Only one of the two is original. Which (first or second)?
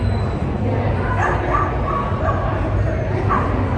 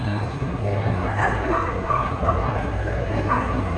first